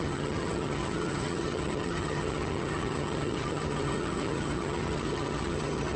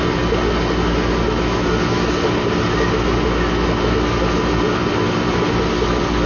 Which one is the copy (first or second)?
first